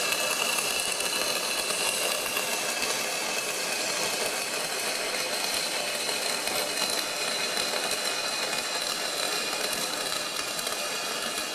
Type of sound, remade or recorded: recorded